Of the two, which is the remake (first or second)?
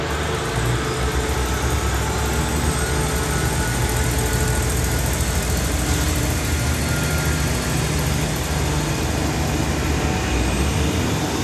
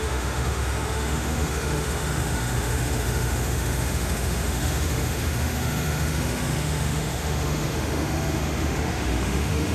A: second